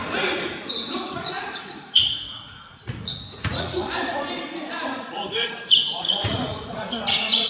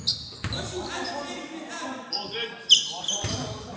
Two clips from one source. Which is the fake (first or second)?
first